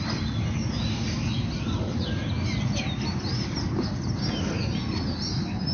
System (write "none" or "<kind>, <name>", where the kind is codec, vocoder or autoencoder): none